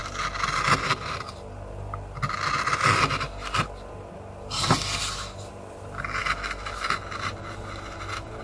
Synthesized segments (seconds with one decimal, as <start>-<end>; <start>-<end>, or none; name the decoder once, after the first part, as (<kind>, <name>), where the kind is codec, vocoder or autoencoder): none